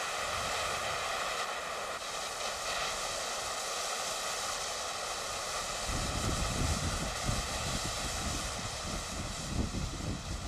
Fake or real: real